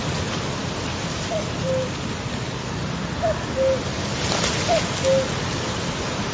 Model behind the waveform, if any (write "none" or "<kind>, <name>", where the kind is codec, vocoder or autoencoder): none